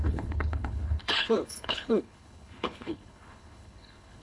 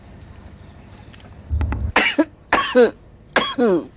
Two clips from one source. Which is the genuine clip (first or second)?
second